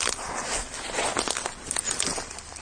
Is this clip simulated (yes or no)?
no